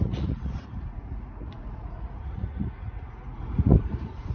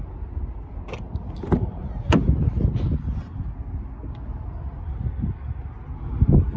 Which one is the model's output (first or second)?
first